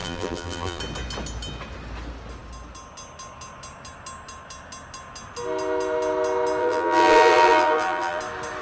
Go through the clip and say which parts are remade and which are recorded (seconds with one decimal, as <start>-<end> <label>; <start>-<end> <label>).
0.0-0.8 remade; 0.8-6.6 recorded; 6.6-8.2 remade; 8.2-8.6 recorded